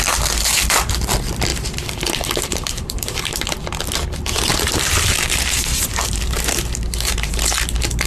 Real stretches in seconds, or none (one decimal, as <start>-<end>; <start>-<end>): 0.0-1.5; 3.6-4.5; 7.5-8.1